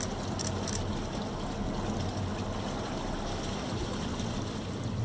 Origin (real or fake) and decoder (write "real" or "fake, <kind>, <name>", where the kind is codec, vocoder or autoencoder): real